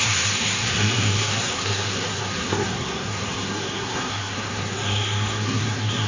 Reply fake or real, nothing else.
fake